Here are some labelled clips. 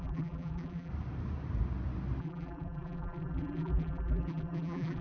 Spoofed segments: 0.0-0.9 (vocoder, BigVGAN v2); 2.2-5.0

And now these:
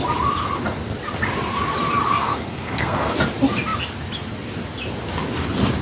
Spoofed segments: 2.1-3.1 (codec, SNAC)

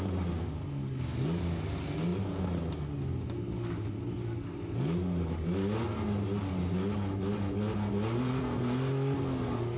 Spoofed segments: none

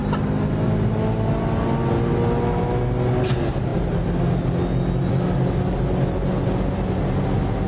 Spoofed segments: none

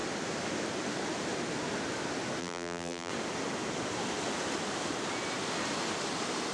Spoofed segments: 2.4-3.1 (vocoder, BigVGAN v2)

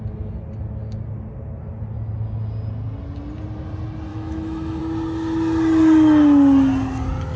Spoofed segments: 4.1-4.8 (autoencoder, DAC-VAE)